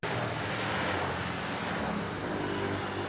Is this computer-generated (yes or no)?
no